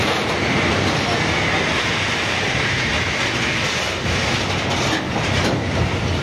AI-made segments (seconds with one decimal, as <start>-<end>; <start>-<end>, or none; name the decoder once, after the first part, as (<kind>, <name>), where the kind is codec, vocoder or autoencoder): none